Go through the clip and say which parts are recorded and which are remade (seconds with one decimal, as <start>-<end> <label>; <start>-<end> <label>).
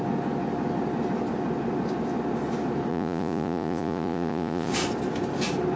0.0-2.9 recorded; 2.9-4.7 remade; 4.7-5.8 recorded